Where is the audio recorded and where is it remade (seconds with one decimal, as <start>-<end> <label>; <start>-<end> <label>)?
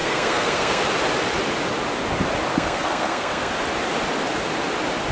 0.0-0.8 remade; 0.8-2.5 recorded; 2.5-3.5 remade; 3.5-5.1 recorded